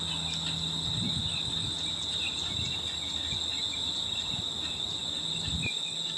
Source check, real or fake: real